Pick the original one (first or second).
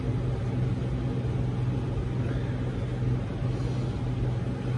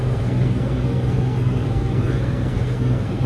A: first